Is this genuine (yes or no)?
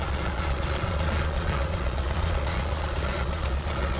no